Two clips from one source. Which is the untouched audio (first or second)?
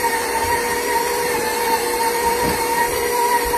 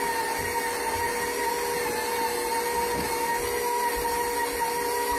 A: second